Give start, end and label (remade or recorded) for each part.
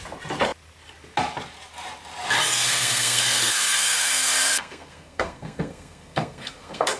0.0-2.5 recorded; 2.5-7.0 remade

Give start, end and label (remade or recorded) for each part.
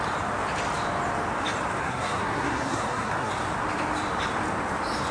0.0-1.8 recorded; 1.8-3.3 remade; 3.3-5.1 recorded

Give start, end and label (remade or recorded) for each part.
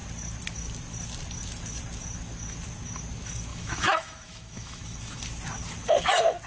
0.0-3.5 recorded; 3.5-5.2 remade; 5.2-6.5 recorded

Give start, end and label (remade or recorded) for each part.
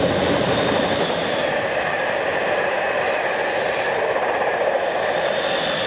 0.0-5.9 recorded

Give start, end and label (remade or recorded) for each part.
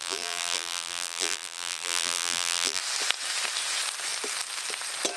0.0-2.8 remade; 2.8-5.2 recorded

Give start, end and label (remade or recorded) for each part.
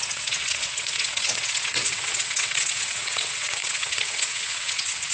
0.0-5.1 remade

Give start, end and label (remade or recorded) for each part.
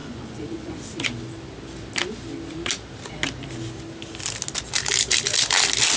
0.0-0.8 remade; 0.8-6.0 recorded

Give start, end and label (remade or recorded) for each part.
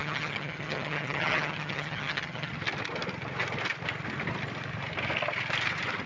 0.0-2.5 remade; 2.5-6.1 recorded